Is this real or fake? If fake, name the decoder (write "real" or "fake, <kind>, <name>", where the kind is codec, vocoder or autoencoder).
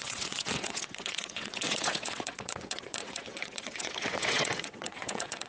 fake, vocoder, WaveNeXt